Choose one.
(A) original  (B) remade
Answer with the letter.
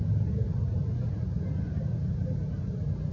A